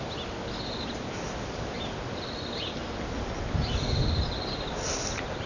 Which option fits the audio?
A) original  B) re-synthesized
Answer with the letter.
A